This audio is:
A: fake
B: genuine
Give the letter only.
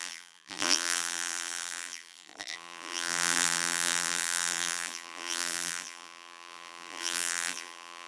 A